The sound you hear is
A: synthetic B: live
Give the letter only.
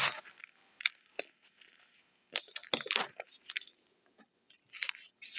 B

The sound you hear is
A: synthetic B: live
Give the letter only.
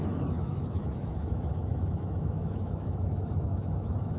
A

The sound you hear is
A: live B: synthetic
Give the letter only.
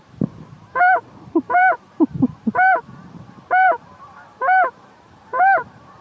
B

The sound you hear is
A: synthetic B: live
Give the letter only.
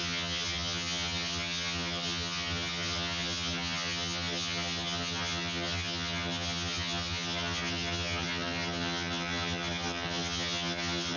A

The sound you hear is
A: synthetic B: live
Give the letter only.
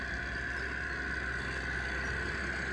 B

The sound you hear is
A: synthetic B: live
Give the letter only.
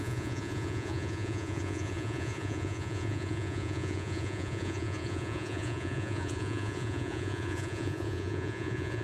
A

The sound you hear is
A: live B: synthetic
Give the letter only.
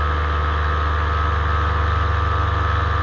A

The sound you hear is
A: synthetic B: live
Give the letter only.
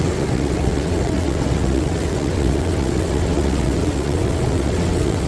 A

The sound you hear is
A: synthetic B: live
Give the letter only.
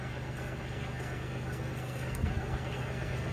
A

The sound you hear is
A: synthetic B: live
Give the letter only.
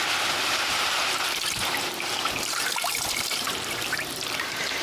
A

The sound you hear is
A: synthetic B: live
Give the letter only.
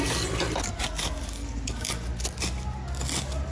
B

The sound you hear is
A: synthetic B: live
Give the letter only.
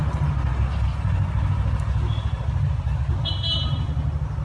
B